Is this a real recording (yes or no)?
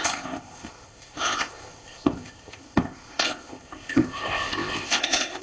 no